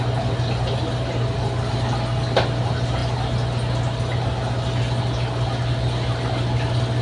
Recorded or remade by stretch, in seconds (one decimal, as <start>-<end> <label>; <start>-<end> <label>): 0.0-7.0 recorded